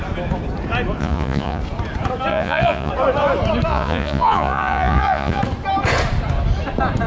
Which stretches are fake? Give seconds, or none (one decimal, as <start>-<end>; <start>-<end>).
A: 1.0-1.6; 2.3-2.9; 3.7-5.4